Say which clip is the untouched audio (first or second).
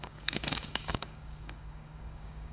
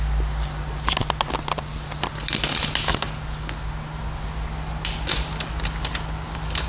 second